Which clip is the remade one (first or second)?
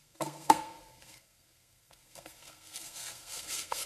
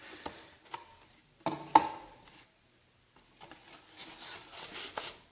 first